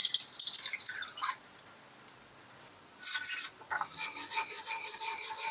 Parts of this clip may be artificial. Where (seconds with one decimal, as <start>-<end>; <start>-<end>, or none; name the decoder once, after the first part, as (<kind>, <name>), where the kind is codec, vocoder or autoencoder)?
0.8-1.4 (vocoder, BigVGAN v2); 4.7-5.5